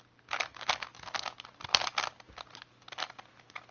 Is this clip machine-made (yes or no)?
no